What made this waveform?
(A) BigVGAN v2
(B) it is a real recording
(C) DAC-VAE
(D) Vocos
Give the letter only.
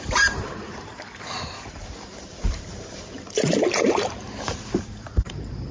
A